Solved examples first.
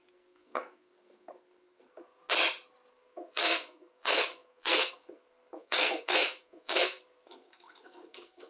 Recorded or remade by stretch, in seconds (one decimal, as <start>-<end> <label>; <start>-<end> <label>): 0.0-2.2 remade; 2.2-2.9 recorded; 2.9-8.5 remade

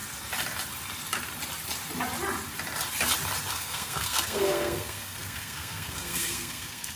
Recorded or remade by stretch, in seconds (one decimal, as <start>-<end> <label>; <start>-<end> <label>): 0.0-3.5 recorded; 3.5-7.0 remade

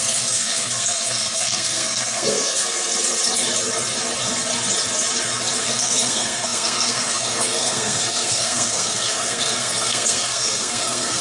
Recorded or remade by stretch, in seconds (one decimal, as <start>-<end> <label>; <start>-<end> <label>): 0.0-2.9 remade; 2.9-5.6 recorded; 5.6-11.2 remade

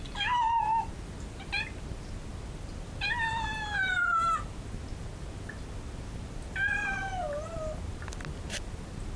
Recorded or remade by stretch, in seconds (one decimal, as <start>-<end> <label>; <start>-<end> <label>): 0.0-9.2 recorded

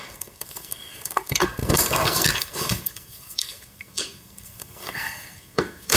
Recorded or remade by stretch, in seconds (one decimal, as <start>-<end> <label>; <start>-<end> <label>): 0.0-6.0 remade

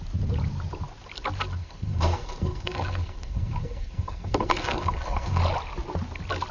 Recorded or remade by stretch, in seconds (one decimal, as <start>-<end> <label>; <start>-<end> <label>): 0.0-1.6 recorded; 1.6-5.4 remade; 5.4-6.5 recorded